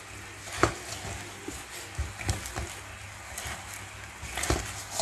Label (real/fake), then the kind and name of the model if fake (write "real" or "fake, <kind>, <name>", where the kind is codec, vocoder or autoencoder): real